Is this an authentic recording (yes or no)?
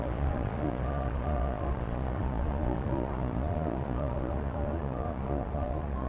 no